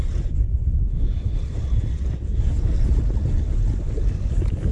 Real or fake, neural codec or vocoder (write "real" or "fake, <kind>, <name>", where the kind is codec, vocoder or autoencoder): real